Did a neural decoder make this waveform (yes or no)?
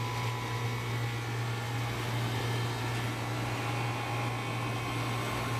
no